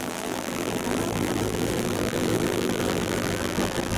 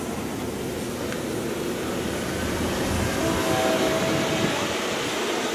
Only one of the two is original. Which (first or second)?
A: second